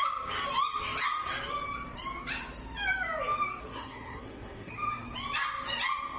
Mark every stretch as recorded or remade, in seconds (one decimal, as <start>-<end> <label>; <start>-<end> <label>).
0.0-3.6 recorded; 3.6-4.7 remade; 4.7-6.2 recorded